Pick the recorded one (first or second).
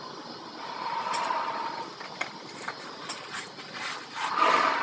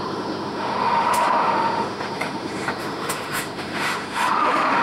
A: first